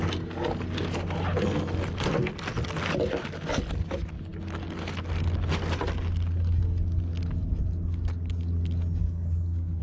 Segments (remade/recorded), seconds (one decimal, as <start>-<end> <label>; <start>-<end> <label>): 0.0-9.0 recorded; 9.0-9.8 remade

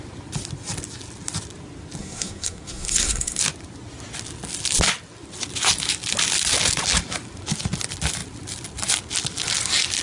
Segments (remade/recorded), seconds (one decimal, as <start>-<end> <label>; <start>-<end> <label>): 0.0-2.0 recorded; 2.0-3.4 remade; 3.4-10.0 recorded

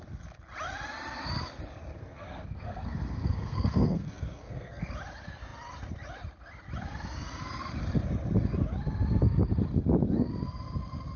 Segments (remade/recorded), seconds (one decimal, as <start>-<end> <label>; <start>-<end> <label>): 0.0-1.9 recorded; 1.9-4.9 remade; 4.9-11.2 recorded

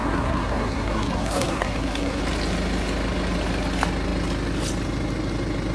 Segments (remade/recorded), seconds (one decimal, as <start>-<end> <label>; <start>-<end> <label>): 0.0-2.2 remade; 2.2-5.7 recorded

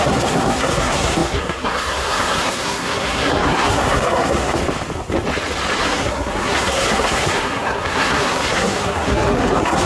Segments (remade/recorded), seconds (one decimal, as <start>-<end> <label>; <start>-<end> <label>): 0.0-4.6 remade; 4.6-5.8 recorded; 5.8-9.9 remade